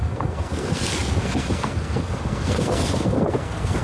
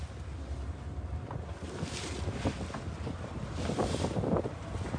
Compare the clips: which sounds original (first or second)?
second